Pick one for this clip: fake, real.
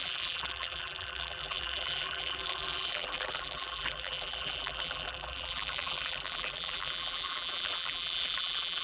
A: fake